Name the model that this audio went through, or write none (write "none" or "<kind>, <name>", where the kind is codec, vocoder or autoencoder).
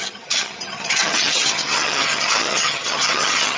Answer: vocoder, HiFi-GAN